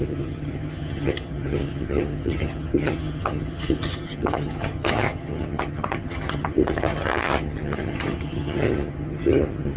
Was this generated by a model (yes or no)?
yes